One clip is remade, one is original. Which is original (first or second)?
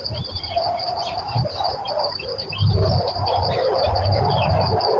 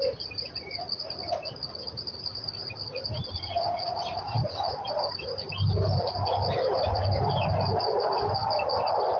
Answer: second